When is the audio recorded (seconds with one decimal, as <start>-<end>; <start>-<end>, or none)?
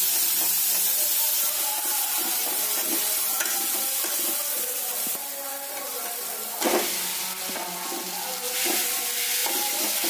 0.0-10.1